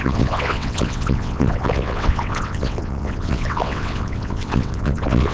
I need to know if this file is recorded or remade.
remade